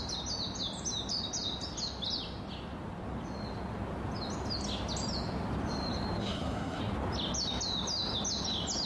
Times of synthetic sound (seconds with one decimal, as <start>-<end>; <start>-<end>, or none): 6.2-6.8